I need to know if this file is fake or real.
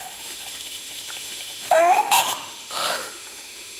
fake